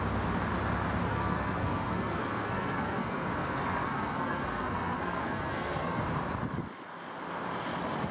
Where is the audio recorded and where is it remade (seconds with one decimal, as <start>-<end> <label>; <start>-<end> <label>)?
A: 0.0-1.1 recorded; 1.1-6.0 remade; 6.0-8.1 recorded